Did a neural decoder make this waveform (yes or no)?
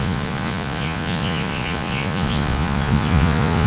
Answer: yes